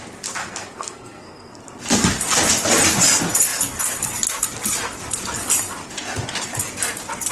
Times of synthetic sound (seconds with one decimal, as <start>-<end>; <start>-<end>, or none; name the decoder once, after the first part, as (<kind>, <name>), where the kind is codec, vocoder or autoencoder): 0.4-1.6 (codec, SNAC)